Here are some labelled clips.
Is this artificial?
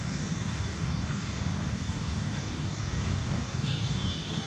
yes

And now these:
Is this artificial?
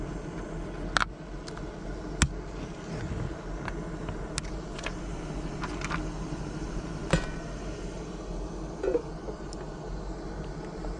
no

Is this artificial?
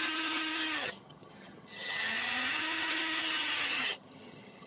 yes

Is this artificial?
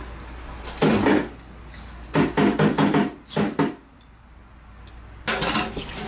no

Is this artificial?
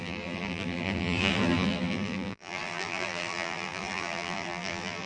yes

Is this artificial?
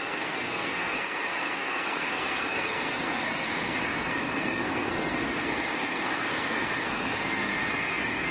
yes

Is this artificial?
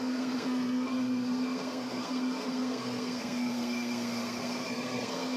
yes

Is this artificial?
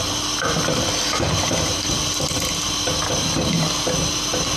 no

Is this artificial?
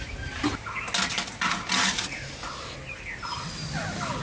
no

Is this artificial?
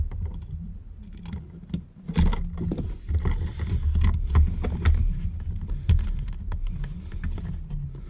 no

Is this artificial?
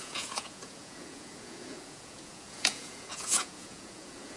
yes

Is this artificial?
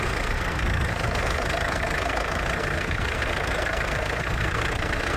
yes